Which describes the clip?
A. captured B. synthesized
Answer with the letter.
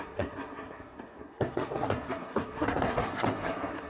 B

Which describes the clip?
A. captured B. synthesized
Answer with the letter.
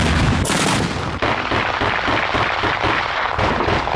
A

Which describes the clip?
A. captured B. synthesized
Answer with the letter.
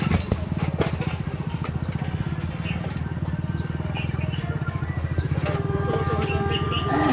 A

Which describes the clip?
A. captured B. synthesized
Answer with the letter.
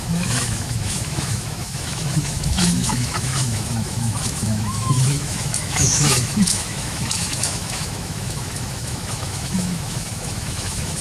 B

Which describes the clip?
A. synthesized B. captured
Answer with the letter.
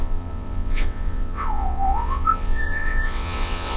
A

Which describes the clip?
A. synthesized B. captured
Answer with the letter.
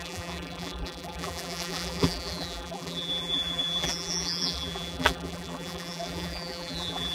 A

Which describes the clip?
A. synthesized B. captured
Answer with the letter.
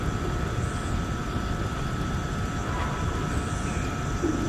B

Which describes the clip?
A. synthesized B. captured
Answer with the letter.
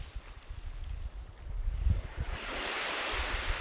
B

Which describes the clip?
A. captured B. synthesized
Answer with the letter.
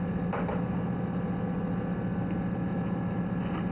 A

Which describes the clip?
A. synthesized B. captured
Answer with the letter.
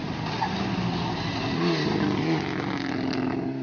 B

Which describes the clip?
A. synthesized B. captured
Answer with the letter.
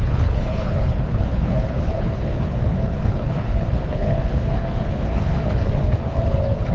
A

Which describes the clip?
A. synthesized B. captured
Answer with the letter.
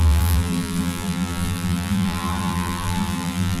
A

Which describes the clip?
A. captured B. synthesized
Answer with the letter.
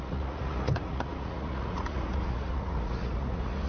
B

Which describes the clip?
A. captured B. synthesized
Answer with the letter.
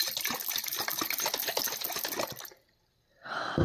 A